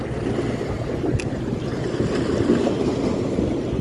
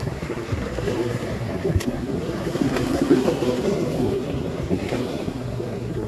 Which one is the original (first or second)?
first